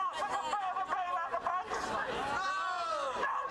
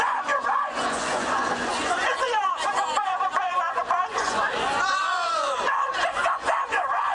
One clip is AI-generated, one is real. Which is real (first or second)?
first